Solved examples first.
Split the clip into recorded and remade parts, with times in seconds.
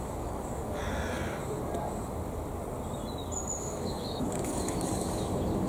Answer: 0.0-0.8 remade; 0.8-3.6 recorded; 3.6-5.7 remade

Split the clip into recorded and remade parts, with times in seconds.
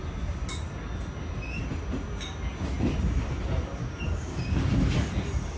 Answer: 0.0-3.8 recorded; 3.8-4.6 remade; 4.6-5.6 recorded